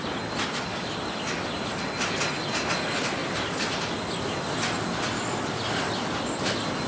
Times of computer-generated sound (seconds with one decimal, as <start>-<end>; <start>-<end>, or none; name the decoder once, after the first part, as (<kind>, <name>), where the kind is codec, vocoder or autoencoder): none